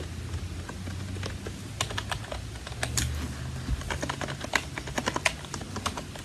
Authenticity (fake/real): real